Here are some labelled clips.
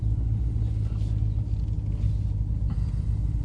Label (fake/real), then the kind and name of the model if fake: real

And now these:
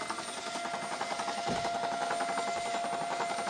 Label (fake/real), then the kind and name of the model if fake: real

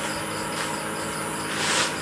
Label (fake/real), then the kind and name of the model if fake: real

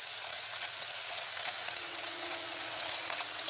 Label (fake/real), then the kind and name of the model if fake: fake, vocoder, WaveNeXt